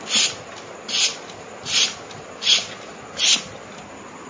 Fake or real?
real